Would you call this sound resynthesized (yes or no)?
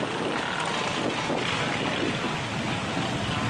no